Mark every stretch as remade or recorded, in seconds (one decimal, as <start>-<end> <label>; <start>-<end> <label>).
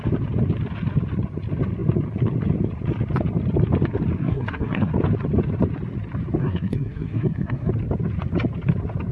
0.0-4.2 recorded; 4.2-4.9 remade; 4.9-6.4 recorded; 6.4-7.7 remade; 7.7-9.1 recorded